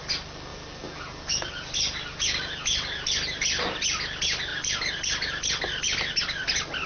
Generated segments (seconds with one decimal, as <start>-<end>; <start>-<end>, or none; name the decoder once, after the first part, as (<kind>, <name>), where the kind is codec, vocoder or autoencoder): none